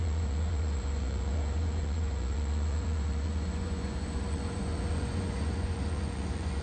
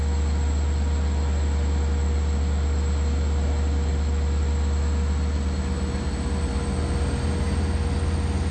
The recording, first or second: second